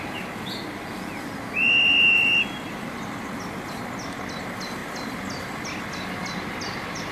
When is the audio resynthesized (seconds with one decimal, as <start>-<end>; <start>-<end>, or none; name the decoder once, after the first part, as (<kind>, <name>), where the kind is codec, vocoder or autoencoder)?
none

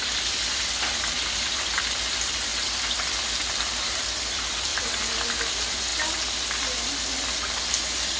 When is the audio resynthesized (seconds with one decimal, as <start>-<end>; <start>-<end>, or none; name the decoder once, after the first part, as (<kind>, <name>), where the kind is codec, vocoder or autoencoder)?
0.0-5.9 (vocoder, BigVGAN v2); 7.7-8.2

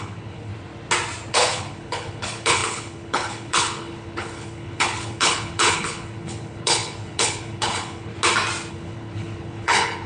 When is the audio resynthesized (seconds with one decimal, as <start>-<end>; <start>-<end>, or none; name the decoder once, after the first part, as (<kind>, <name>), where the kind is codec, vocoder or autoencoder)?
0.0-0.5 (codec, HILCodec); 1.3-8.1; 8.7-10.1

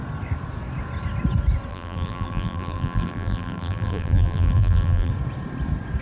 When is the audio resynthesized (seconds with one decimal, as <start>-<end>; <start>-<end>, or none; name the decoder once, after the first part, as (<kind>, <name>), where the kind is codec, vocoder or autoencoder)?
1.7-5.1 (vocoder, BigVGAN v2)

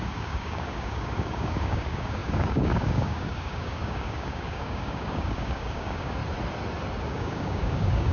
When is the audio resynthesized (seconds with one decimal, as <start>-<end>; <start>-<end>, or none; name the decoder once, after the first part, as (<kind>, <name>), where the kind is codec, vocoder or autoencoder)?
0.0-6.2 (codec, DAC); 7.0-8.1

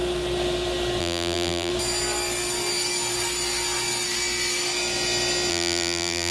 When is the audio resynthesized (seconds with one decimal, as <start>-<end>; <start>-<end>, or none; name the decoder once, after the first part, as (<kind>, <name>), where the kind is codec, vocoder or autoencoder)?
1.0-1.7 (vocoder, BigVGAN v2); 5.5-6.3

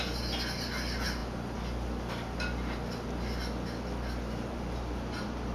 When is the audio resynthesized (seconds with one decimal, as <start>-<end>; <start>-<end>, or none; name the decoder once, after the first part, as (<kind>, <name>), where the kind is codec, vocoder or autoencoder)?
none

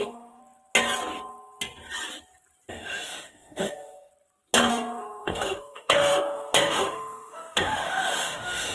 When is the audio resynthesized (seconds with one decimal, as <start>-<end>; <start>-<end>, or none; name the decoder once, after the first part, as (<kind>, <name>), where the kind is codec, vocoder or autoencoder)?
0.0-0.4 (autoencoder, DAC-VAE); 2.7-4.1; 4.7-8.7